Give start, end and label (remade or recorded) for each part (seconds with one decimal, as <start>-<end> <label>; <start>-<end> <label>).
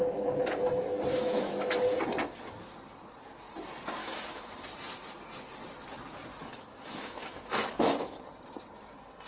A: 0.0-1.1 recorded; 1.1-2.0 remade; 2.0-4.0 recorded; 4.0-4.5 remade; 4.5-6.3 recorded; 6.3-8.2 remade; 8.2-9.3 recorded